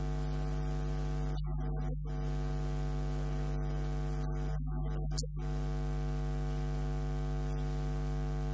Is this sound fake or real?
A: real